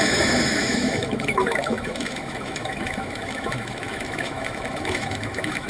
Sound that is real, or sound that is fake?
fake